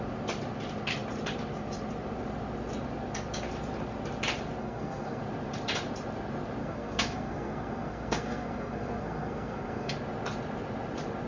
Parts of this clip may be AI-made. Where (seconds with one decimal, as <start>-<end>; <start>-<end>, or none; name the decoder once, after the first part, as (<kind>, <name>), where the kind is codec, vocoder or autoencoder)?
4.6-5.2 (codec, SNAC); 6.6-9.9